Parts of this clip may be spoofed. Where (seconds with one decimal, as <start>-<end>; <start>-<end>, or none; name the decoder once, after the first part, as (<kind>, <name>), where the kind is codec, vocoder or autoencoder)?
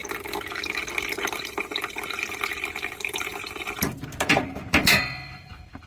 0.0-5.9 (vocoder, BigVGAN v2)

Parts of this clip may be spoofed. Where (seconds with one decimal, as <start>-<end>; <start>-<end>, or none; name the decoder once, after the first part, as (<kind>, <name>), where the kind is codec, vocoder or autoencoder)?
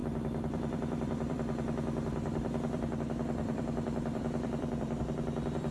0.0-3.0 (vocoder, BigVGAN v2); 3.4-5.0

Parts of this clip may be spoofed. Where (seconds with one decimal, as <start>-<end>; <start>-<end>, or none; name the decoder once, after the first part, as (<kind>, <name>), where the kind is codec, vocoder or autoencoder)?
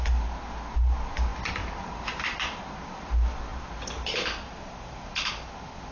1.3-3.0 (vocoder, BigVGAN v2); 3.5-5.3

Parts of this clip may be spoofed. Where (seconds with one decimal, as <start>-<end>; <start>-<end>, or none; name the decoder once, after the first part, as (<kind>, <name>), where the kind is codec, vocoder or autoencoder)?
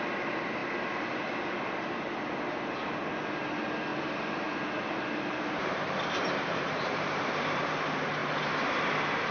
3.9-7.6 (vocoder, BigVGAN v2)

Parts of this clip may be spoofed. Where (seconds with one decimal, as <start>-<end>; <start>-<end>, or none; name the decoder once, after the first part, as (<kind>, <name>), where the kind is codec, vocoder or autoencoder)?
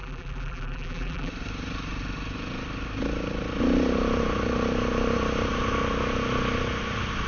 0.0-1.3 (vocoder, BigVGAN v2)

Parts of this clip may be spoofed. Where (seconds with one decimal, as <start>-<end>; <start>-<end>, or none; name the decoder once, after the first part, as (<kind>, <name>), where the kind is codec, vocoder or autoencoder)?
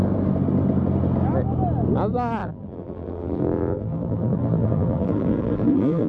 2.4-6.1 (vocoder, BigVGAN v2)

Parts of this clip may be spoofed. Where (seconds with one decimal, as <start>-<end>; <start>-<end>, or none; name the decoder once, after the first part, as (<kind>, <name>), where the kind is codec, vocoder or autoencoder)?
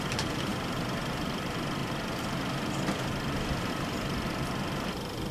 0.0-0.5 (vocoder, BigVGAN v2); 1.1-1.8